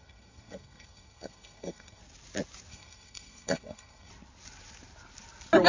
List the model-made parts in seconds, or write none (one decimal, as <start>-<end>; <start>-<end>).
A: 0.0-2.0; 2.7-4.1